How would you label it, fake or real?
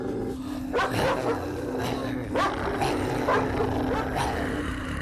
real